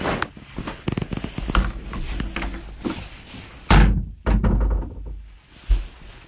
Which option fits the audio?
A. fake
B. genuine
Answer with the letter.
B